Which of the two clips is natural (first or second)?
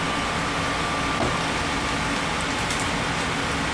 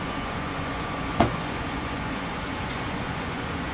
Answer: first